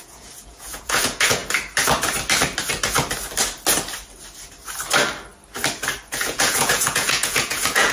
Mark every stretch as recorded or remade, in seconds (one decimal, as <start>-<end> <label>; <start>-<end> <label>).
0.0-1.4 remade; 1.4-6.1 recorded; 6.1-7.9 remade